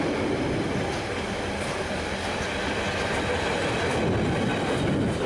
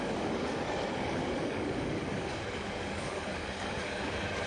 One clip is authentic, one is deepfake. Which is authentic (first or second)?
first